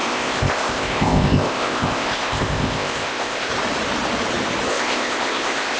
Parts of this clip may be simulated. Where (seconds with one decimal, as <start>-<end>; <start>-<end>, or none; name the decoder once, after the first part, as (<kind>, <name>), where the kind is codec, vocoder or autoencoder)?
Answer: 0.0-3.5 (codec, ZipCodec); 4.7-5.8